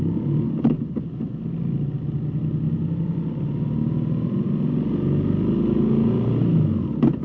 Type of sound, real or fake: real